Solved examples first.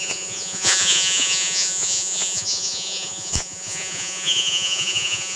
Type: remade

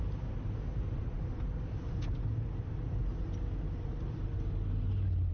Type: recorded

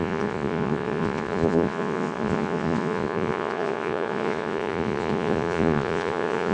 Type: remade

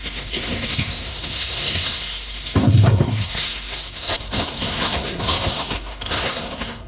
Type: remade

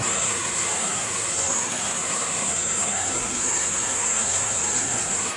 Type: remade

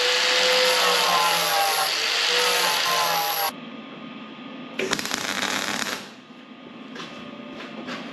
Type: recorded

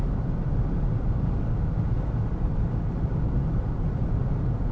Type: recorded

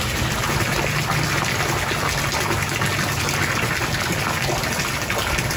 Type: recorded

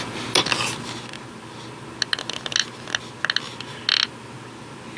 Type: recorded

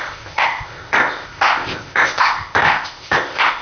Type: remade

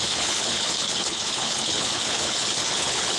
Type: remade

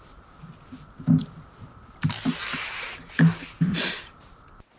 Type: recorded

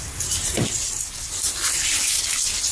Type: recorded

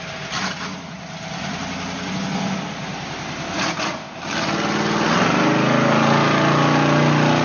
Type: recorded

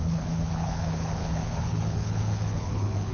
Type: remade